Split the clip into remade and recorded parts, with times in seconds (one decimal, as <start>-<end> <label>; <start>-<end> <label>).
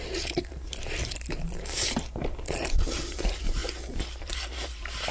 0.0-3.6 remade; 3.6-4.2 recorded; 4.2-5.1 remade